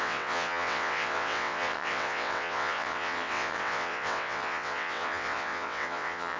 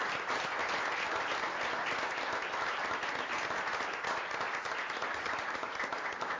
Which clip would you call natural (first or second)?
second